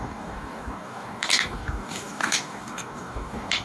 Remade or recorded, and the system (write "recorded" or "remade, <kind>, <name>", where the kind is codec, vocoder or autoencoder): remade, codec, DAC